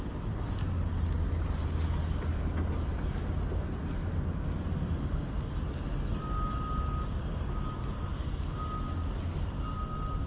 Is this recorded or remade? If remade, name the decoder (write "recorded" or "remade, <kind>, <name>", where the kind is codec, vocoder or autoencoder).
recorded